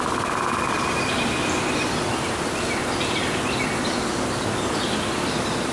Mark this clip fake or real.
real